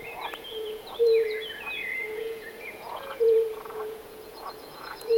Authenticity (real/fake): fake